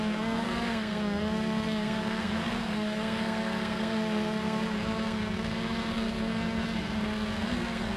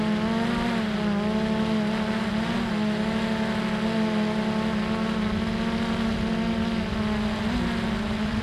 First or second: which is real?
second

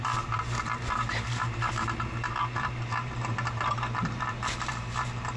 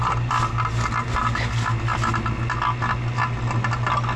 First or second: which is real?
second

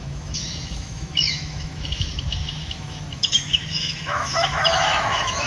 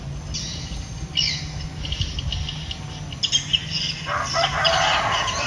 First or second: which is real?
second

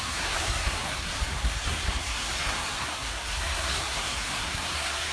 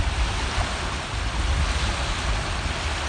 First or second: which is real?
second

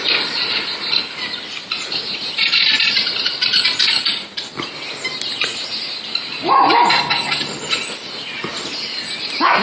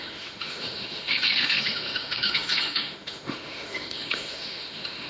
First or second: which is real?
first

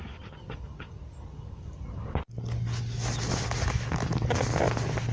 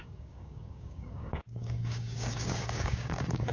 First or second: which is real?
first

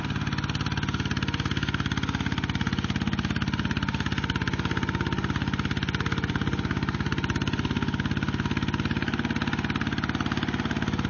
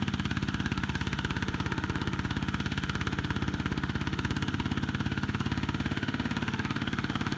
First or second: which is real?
first